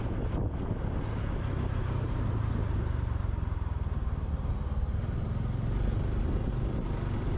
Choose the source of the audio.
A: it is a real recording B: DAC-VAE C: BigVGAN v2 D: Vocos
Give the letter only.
A